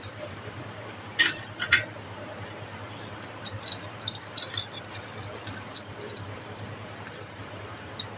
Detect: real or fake fake